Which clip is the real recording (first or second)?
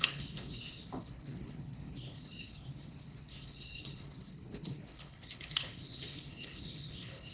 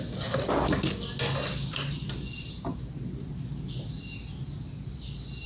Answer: second